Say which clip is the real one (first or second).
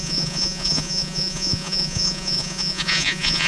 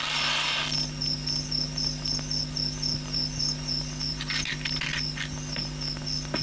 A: second